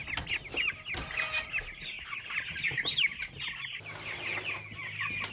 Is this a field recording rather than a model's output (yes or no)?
yes